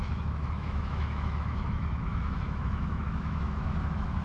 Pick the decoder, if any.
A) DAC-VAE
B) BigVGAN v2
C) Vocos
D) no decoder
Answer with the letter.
A